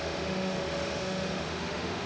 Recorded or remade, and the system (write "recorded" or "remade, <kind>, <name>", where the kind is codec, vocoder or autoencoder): remade, autoencoder, DAC-VAE